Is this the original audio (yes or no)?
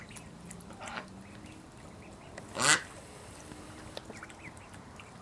yes